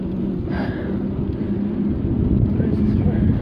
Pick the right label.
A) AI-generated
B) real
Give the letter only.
B